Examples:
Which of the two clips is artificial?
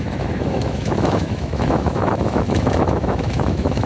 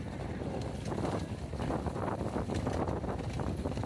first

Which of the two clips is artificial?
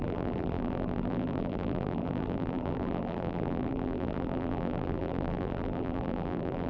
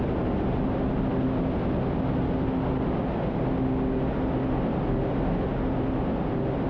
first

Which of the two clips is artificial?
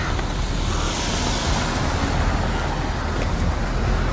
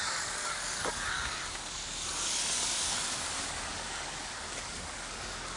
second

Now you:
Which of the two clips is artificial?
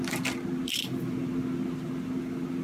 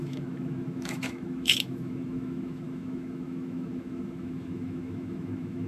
second